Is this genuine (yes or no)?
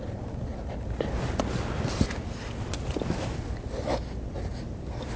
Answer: yes